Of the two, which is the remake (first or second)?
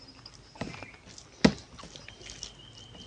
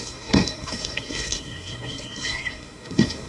second